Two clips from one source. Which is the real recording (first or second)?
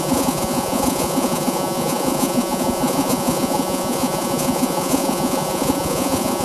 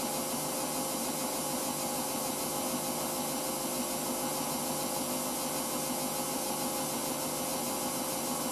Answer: second